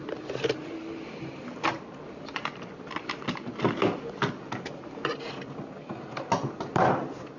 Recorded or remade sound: recorded